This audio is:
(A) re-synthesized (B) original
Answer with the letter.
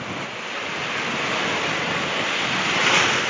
B